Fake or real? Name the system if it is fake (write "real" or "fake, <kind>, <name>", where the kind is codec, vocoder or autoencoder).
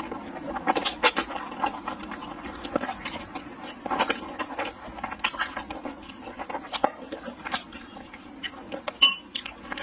real